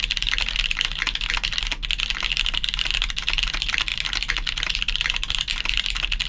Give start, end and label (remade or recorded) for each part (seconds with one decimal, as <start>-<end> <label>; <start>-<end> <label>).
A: 0.0-6.3 recorded